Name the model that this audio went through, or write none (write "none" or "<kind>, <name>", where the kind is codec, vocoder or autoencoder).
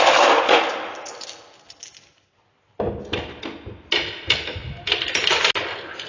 none